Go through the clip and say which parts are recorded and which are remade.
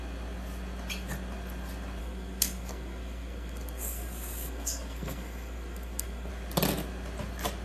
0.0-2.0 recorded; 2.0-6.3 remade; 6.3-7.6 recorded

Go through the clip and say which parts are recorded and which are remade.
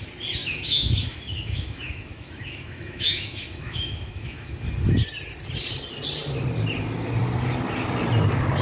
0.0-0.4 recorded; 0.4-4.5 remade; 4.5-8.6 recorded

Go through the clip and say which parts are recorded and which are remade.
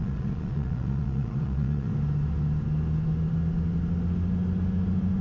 0.0-1.9 remade; 1.9-5.2 recorded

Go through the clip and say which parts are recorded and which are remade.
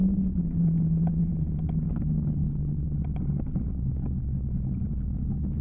0.0-5.6 recorded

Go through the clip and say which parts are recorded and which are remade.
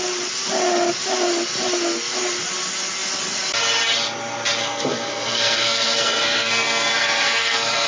0.0-4.6 recorded; 4.6-7.9 remade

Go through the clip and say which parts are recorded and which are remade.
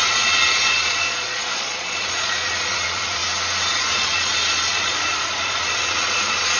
0.0-3.2 remade; 3.2-3.7 recorded; 3.7-6.6 remade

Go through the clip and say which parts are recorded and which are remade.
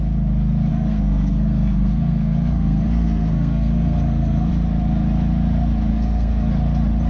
0.0-0.7 recorded; 0.7-4.5 remade; 4.5-5.9 recorded; 5.9-6.5 remade; 6.5-7.1 recorded